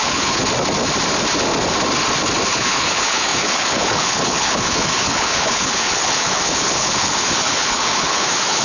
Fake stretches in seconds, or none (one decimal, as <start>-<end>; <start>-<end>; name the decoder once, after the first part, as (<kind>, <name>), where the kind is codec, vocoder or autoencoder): 0.0-0.4 (codec, HILCodec); 2.5-8.6